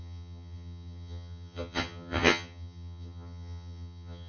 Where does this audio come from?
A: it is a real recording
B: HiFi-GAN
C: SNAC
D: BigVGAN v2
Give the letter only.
B